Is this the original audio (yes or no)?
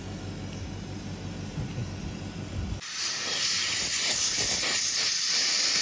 yes